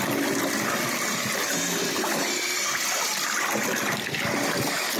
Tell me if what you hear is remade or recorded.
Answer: recorded